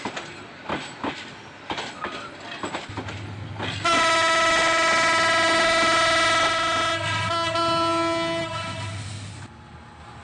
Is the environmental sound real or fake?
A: real